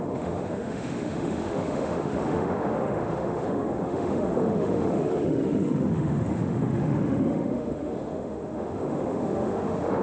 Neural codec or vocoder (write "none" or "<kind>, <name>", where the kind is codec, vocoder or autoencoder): autoencoder, DAC-VAE